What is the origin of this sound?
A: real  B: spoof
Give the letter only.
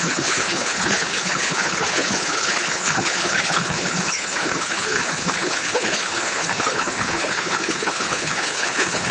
B